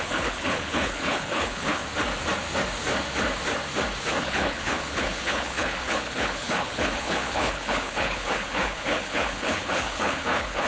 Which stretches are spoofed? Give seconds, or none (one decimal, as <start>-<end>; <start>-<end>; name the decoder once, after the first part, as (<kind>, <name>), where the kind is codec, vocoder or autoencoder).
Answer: 0.0-1.8 (codec, HILCodec); 4.2-10.7